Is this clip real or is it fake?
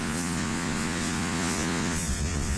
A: fake